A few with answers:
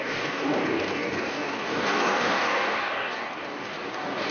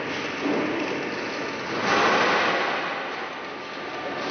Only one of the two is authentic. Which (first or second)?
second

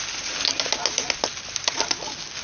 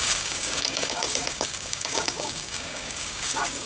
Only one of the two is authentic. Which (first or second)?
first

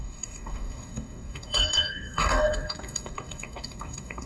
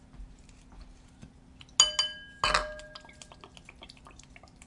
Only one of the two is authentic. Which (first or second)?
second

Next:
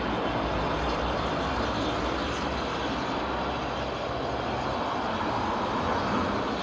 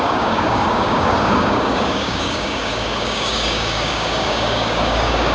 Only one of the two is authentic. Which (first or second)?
first